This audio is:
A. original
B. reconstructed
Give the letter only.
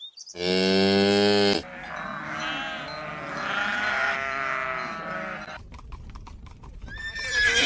A